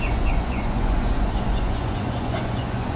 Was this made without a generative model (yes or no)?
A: no